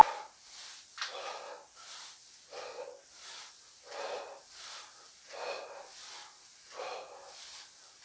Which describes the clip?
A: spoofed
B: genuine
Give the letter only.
B